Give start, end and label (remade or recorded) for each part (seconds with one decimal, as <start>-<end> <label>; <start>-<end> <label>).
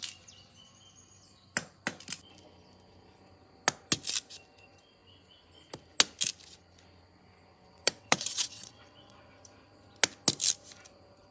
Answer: 0.0-7.5 recorded; 7.5-9.3 remade; 9.3-11.3 recorded